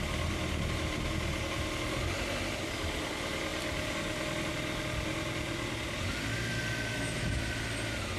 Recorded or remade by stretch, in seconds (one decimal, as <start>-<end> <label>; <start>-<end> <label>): 0.0-6.9 recorded; 6.9-7.4 remade; 7.4-8.2 recorded